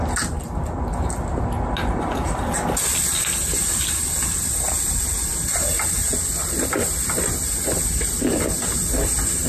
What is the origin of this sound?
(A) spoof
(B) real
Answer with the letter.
B